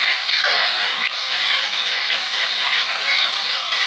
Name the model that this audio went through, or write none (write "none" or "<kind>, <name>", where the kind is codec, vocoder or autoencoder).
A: codec, DAC